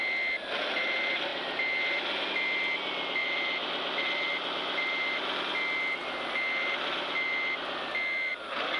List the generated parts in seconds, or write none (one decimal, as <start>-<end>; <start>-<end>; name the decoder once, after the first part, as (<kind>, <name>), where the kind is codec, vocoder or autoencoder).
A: 3.2-5.4 (vocoder, BigVGAN v2)